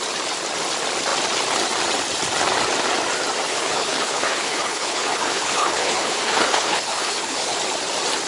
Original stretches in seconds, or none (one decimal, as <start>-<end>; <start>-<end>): 0.0-3.5; 7.6-8.3